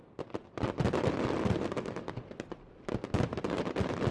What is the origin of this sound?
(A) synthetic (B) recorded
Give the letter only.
B